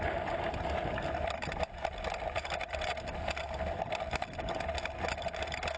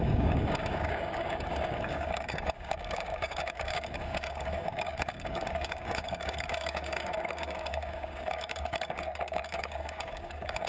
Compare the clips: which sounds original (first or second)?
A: first